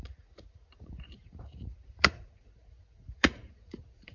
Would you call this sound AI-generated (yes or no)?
yes